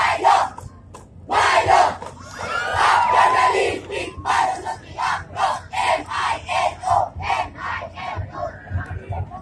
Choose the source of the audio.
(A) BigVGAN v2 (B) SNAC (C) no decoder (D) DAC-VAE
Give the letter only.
C